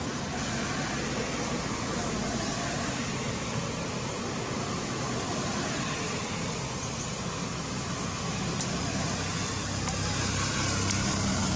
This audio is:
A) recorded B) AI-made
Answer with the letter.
A